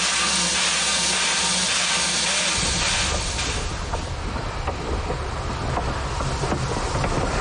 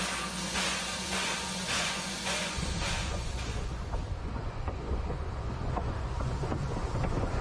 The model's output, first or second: second